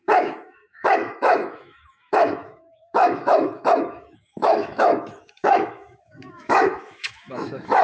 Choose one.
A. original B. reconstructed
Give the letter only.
B